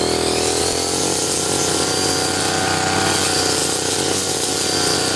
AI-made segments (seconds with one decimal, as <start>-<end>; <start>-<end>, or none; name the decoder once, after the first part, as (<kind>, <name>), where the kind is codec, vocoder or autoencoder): 3.6-4.5 (vocoder, BigVGAN v2)